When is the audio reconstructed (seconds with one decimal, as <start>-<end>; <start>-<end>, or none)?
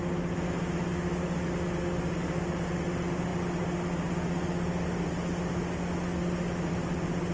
none